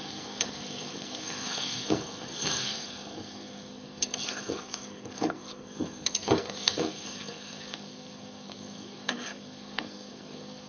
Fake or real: fake